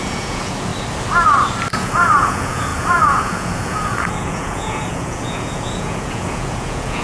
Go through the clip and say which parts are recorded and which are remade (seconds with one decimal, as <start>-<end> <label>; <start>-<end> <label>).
0.0-0.7 remade; 0.7-1.7 recorded; 1.7-7.0 remade